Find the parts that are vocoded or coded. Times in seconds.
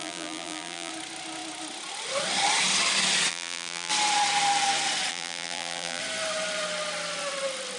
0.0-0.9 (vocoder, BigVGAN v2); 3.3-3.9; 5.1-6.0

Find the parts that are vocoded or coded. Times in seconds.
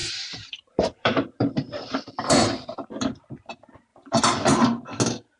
0.0-3.2 (vocoder, BigVGAN v2); 3.9-4.5